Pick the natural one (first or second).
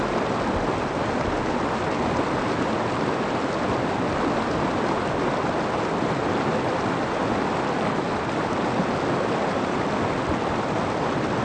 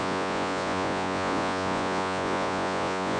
first